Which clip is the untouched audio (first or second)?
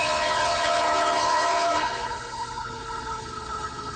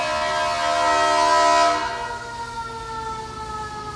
second